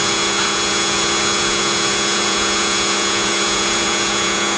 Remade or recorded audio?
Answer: remade